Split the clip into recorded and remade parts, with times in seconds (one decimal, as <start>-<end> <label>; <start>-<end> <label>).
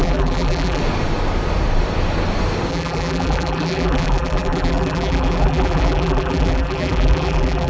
0.0-0.8 remade; 0.8-2.7 recorded; 2.7-7.7 remade